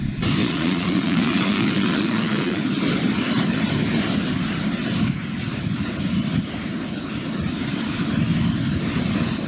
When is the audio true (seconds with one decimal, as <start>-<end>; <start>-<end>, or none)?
0.0-0.4; 2.6-9.5